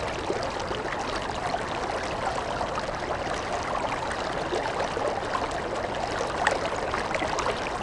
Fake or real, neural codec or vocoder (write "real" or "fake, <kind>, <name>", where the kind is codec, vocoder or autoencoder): real